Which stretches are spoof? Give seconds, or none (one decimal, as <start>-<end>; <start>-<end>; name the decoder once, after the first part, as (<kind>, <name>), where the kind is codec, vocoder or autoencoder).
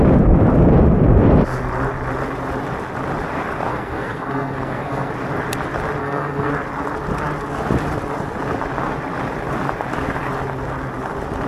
3.7-5.1 (codec, SNAC); 6.0-6.5